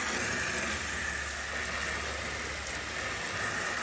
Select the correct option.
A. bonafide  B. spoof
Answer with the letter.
A